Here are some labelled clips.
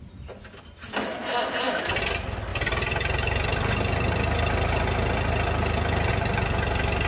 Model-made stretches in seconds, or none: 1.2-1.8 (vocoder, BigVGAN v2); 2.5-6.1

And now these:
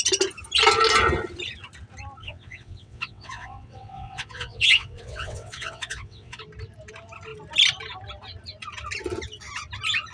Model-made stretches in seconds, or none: 2.2-6.4 (vocoder, WaveNeXt)

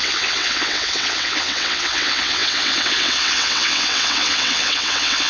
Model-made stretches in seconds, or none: 0.0-5.3 (vocoder, WaveNeXt)

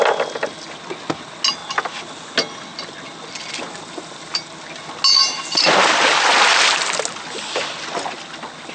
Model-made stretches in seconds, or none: none

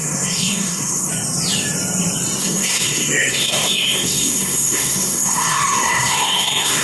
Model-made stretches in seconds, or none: 0.0-1.1 (codec, SNAC); 2.4-6.8

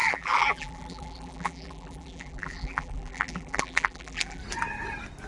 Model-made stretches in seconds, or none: 0.0-4.4 (vocoder, BigVGAN v2)

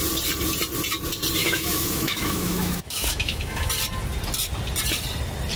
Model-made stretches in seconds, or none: 1.4-3.7 (autoencoder, DAC-VAE)